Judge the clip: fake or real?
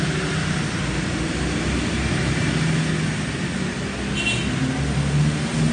real